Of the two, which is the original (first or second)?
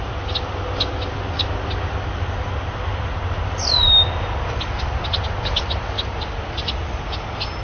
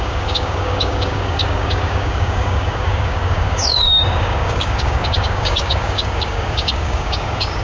first